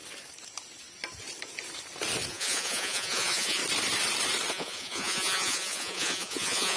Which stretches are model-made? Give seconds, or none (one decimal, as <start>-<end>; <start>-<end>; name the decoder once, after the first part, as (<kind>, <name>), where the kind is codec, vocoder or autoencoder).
2.3-3.6 (vocoder, Vocos); 4.5-6.8